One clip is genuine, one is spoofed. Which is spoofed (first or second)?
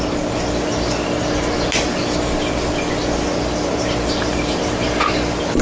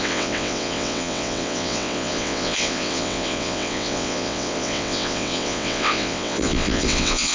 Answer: second